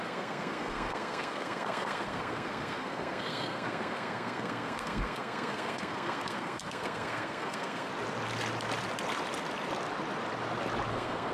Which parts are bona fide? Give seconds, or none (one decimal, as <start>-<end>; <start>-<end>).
7.9-10.9